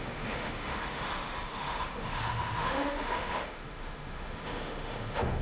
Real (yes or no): no